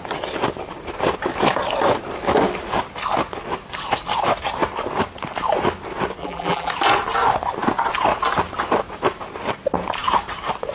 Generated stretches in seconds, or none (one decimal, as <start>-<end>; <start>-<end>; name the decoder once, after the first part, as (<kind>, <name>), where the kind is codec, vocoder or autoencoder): 6.2-6.7 (vocoder, BigVGAN v2)